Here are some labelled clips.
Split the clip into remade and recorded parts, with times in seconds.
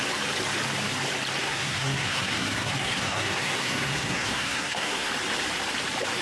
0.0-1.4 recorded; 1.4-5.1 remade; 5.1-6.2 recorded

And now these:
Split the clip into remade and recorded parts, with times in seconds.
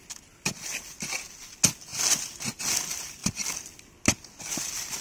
0.0-5.0 recorded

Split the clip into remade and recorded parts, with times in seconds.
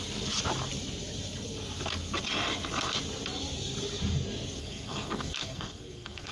0.0-4.6 recorded; 4.6-6.3 remade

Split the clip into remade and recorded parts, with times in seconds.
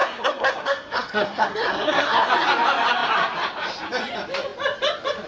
0.0-2.3 remade; 2.3-5.3 recorded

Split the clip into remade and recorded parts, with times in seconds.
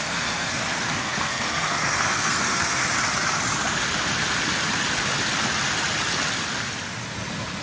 0.0-2.8 remade; 2.8-7.6 recorded